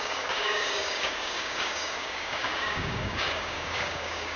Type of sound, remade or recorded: remade